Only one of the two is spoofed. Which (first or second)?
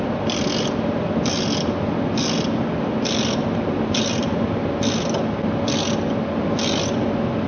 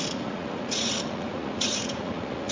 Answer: second